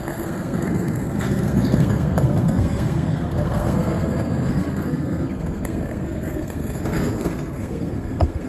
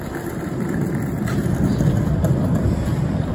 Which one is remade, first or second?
first